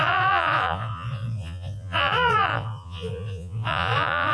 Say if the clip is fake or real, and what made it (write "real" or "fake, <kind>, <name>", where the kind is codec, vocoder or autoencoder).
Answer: fake, vocoder, Vocos